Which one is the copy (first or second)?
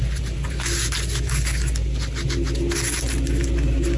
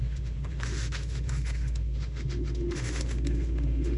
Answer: second